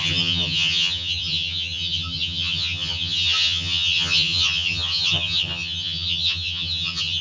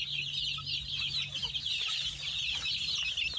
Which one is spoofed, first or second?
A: first